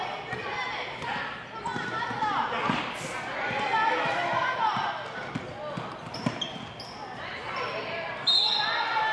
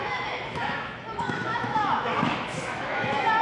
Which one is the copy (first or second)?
second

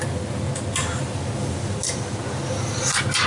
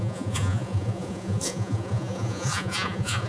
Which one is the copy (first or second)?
second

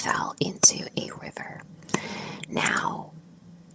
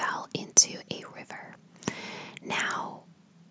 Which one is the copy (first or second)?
first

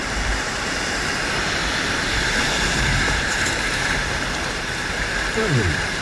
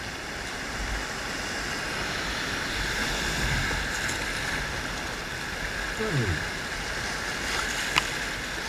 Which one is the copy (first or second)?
first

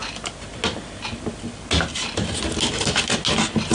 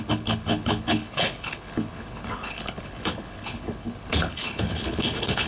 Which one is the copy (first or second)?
second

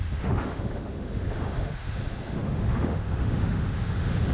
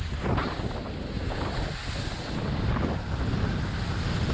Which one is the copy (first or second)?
first